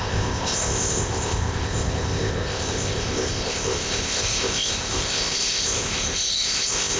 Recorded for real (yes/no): no